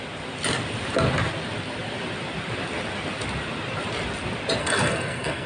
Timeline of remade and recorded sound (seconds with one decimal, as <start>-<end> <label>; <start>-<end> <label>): 0.0-4.6 recorded; 4.6-5.5 remade